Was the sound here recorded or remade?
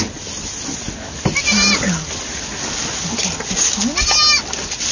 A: recorded